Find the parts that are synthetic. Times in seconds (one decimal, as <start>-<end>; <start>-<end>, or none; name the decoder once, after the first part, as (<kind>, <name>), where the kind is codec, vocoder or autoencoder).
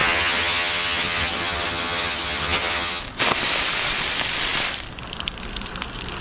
0.0-3.0 (vocoder, HiFi-GAN)